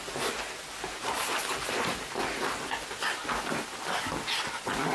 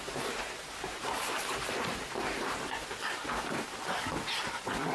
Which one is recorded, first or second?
first